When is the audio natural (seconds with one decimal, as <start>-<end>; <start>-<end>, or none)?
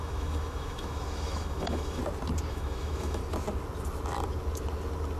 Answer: 2.0-2.5; 3.2-5.2